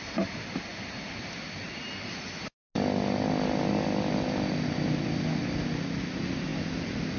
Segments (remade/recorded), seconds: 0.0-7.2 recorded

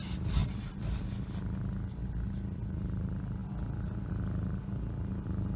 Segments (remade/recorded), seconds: 0.0-0.4 recorded; 0.4-1.0 remade; 1.0-5.6 recorded

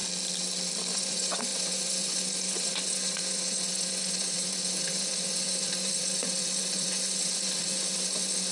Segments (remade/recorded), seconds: 0.0-0.9 recorded; 0.9-8.5 remade

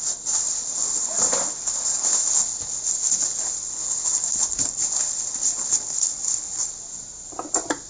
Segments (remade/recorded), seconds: 0.0-7.9 recorded

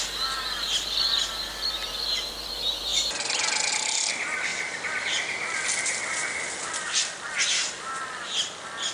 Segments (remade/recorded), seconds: 0.0-2.9 recorded; 2.9-3.7 remade; 3.7-4.5 recorded; 4.5-6.1 remade; 6.1-8.9 recorded

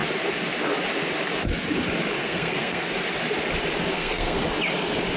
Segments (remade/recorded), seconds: 0.0-2.2 recorded; 2.2-2.9 remade; 2.9-3.9 recorded; 3.9-4.4 remade; 4.4-5.2 recorded